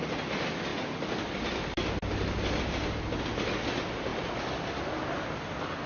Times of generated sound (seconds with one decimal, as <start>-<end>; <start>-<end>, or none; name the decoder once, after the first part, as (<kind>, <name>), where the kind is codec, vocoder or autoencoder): none